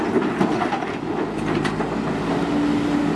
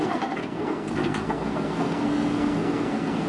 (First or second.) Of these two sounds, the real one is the first